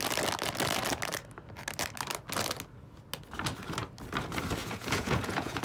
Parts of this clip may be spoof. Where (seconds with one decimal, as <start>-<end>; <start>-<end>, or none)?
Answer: 4.6-5.6

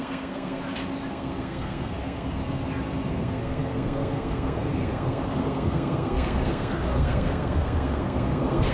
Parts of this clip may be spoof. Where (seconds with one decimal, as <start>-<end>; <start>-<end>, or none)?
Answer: 0.0-0.6; 1.1-2.4; 3.1-8.7

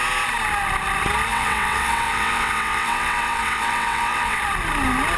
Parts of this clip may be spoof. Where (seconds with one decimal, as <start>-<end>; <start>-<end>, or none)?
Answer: 1.3-4.4

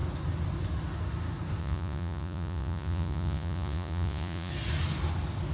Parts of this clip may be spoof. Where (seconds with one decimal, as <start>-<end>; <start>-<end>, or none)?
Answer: 1.6-4.5

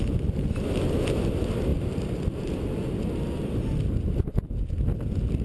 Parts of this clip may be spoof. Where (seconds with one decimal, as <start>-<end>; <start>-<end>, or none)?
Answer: none